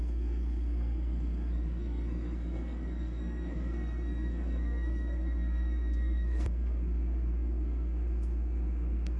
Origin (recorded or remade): remade